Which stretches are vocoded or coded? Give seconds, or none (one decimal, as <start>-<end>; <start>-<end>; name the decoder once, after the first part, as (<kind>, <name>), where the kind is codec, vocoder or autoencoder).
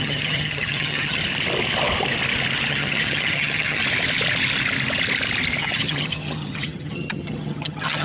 0.0-1.2 (vocoder, HiFi-GAN); 2.7-3.8; 5.6-8.0